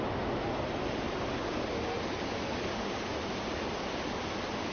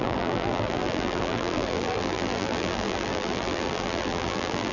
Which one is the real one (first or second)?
first